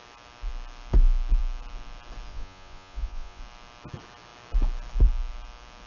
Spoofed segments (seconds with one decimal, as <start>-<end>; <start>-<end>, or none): 2.3-3.4